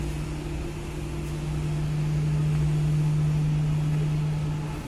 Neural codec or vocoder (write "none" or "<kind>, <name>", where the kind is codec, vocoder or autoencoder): none